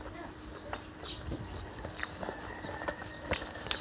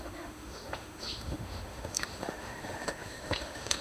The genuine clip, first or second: first